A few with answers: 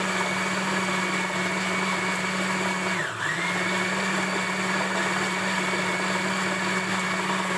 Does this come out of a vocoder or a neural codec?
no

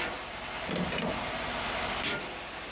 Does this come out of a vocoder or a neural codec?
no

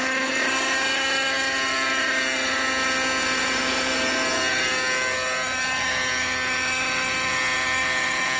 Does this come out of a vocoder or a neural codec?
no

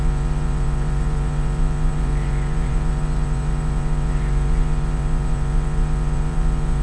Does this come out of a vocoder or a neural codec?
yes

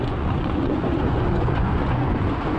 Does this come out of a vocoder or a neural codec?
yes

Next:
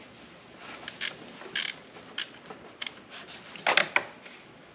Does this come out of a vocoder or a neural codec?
no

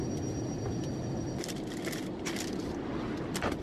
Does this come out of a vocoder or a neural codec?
no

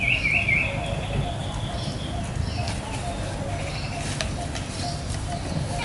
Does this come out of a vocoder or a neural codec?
no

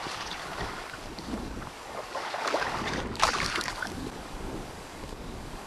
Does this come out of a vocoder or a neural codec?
yes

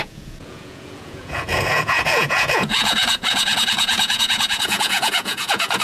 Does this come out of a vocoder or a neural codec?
yes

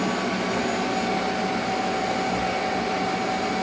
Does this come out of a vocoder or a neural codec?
no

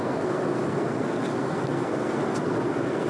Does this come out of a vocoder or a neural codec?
yes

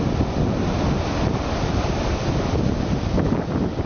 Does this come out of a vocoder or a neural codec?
no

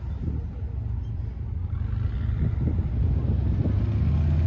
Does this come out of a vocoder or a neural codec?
no